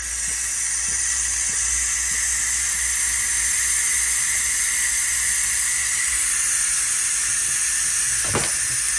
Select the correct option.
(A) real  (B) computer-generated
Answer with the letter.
A